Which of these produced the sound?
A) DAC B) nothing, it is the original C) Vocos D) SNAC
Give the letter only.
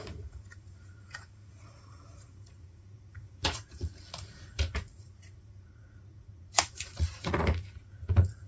C